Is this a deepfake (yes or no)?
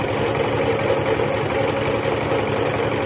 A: no